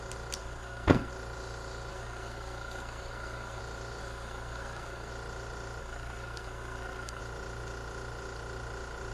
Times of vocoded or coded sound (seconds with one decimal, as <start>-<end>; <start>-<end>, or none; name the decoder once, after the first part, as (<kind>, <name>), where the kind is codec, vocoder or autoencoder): 0.4-1.1 (codec, SNAC); 1.9-3.6; 4.0-5.1; 5.8-7.2